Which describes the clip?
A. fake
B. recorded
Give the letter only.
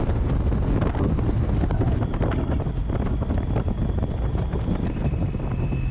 B